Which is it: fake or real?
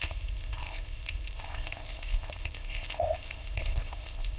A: fake